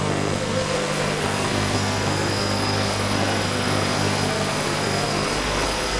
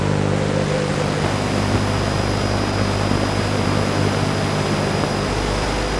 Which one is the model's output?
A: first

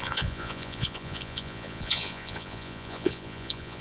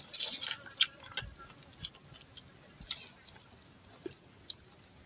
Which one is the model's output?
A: first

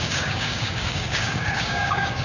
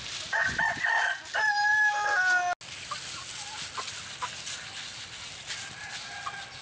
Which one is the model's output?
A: first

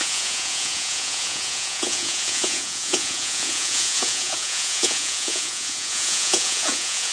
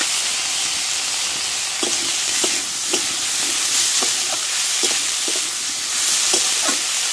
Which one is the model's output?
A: first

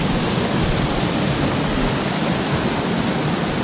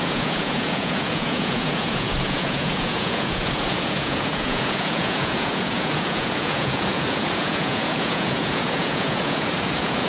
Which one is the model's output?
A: second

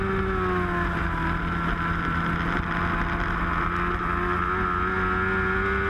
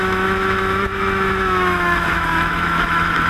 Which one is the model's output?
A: second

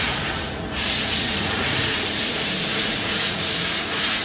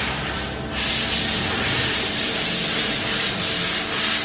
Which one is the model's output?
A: first